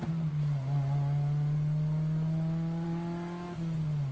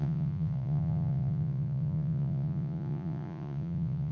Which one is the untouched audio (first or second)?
first